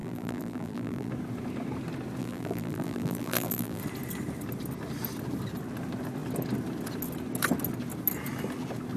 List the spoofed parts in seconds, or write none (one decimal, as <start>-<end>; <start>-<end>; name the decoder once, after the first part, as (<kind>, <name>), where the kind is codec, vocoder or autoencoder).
0.0-1.1 (vocoder, BigVGAN v2); 2.2-3.8